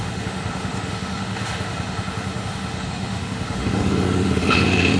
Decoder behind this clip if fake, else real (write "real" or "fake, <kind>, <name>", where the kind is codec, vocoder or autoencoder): fake, autoencoder, DAC-VAE